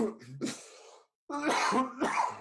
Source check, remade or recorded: recorded